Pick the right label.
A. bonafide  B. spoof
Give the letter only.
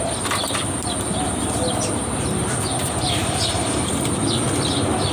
A